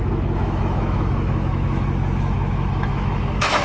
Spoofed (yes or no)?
yes